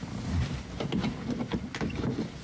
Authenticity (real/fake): real